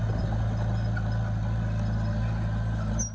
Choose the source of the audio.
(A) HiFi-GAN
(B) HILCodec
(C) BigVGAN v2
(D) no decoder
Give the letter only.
D